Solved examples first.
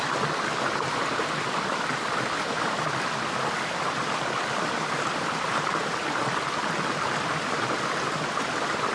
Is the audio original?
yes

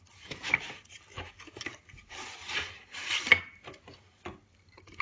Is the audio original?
yes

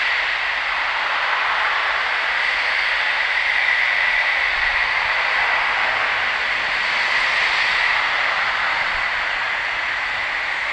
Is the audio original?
yes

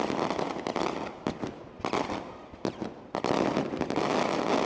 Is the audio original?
yes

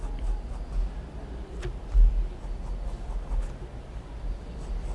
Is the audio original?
yes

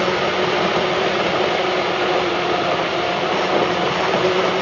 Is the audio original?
no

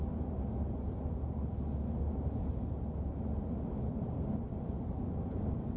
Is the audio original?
yes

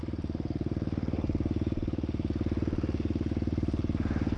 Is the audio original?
yes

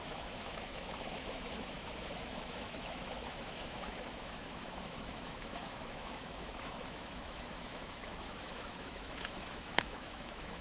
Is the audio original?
no